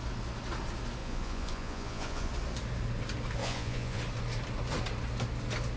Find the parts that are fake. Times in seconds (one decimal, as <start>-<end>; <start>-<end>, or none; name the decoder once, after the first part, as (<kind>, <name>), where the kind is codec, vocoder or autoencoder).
1.0-2.3 (vocoder, Vocos); 3.4-4.0